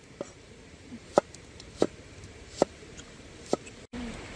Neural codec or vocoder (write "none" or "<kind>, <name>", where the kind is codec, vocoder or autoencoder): vocoder, BigVGAN v2